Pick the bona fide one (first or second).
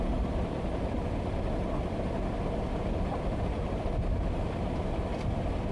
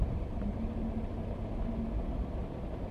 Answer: second